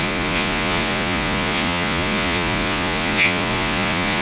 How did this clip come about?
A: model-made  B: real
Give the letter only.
A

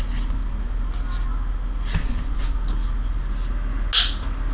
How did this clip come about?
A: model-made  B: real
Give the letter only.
B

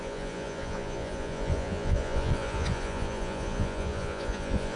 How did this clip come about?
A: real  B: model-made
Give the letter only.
B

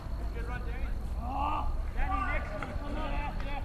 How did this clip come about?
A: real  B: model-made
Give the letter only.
A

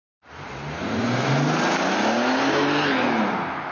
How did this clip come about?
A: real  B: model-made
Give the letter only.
A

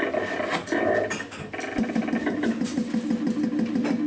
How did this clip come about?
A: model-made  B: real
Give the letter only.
B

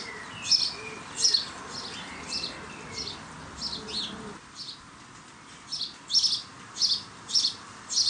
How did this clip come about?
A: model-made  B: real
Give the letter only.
B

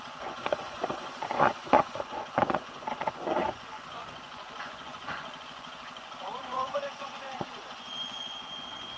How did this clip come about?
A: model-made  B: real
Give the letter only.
A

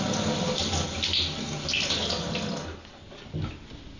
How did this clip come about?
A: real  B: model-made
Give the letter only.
A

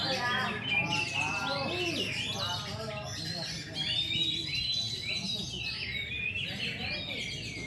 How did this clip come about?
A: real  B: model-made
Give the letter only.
A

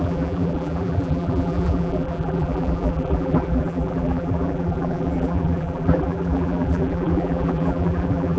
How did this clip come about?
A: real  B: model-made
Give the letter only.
B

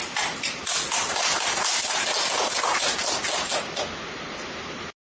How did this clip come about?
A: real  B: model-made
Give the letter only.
A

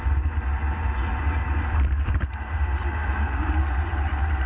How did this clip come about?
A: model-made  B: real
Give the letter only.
B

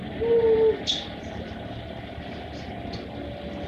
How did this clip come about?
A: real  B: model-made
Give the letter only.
A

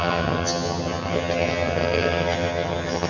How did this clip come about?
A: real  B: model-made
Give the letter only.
B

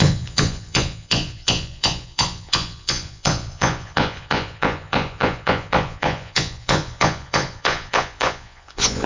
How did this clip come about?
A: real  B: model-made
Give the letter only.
B